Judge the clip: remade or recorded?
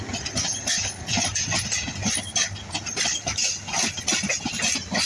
recorded